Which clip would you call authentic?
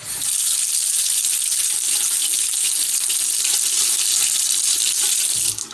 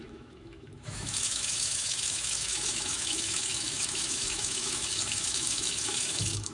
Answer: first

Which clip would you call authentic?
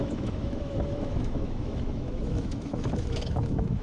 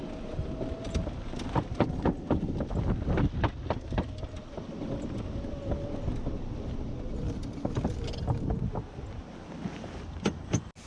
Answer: second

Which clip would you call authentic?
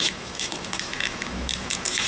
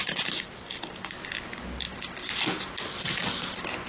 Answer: second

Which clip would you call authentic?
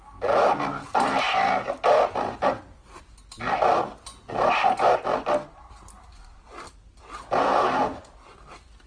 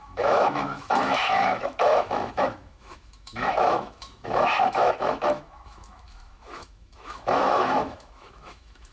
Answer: first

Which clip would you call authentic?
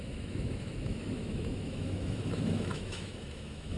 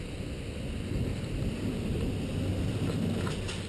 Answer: second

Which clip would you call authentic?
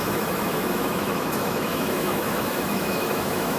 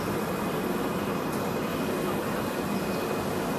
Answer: second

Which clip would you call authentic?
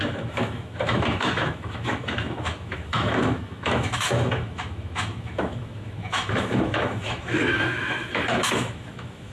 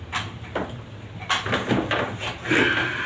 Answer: second